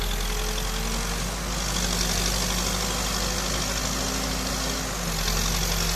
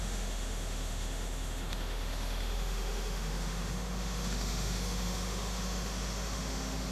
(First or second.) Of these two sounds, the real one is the first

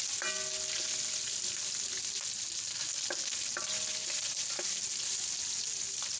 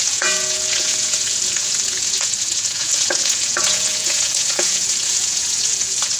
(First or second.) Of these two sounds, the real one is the first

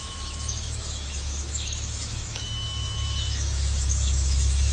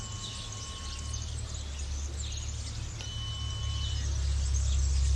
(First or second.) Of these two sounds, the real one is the second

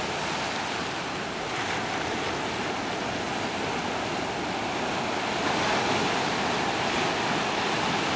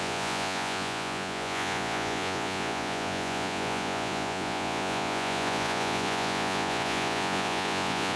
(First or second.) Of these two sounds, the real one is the first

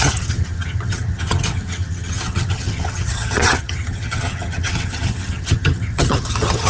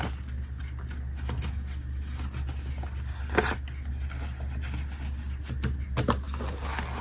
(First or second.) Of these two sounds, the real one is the second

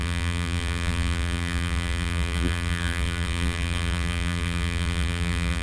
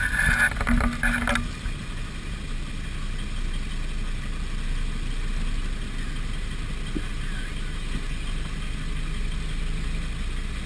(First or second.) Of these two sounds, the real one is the second